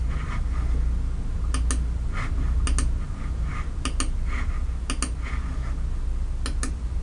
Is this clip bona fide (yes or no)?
yes